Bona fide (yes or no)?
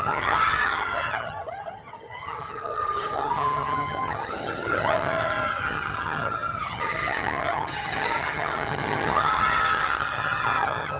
no